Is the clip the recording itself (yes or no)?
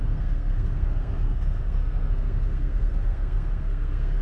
no